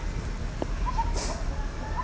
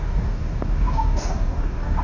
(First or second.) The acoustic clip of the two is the first